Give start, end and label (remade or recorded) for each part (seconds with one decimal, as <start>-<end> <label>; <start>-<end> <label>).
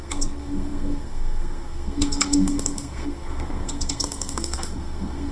0.0-5.3 remade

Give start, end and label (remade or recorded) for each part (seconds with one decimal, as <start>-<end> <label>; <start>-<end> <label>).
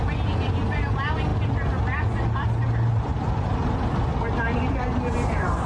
0.0-5.7 recorded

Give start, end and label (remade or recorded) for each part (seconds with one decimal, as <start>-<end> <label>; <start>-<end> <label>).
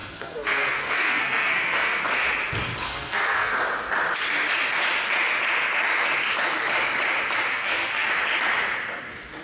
0.0-2.0 remade; 2.0-2.8 recorded; 2.8-3.6 remade; 3.6-7.5 recorded; 7.5-8.1 remade; 8.1-9.4 recorded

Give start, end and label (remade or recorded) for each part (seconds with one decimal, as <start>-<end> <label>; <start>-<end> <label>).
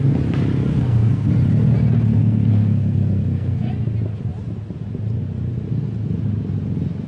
0.0-0.7 recorded; 0.7-1.3 remade; 1.3-2.2 recorded; 2.2-3.7 remade; 3.7-7.1 recorded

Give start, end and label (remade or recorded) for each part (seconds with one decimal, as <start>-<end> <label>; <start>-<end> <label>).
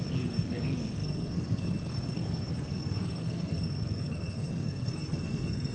0.0-5.7 remade